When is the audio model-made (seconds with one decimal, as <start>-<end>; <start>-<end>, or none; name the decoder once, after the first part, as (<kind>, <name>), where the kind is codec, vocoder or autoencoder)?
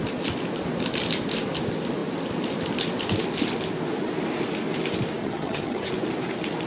5.2-5.9 (vocoder, HiFi-GAN)